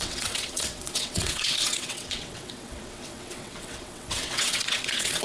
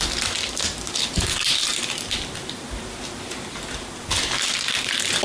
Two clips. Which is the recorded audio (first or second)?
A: second